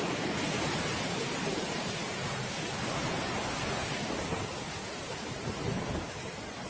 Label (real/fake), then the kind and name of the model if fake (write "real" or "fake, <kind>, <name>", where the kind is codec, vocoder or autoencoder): real